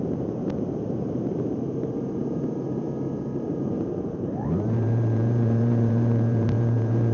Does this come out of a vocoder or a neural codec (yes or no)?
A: yes